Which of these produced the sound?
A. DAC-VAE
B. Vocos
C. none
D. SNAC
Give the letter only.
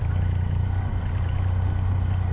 C